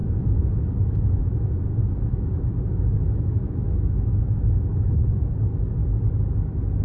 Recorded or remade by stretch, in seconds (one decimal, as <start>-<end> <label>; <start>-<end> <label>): 0.0-5.8 remade; 5.8-6.8 recorded